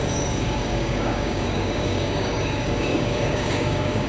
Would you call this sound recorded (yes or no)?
no